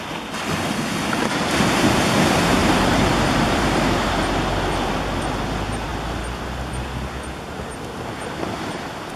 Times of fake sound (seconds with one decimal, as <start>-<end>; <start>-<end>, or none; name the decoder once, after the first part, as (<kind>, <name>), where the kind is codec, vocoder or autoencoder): 2.6-4.1 (vocoder, BigVGAN v2)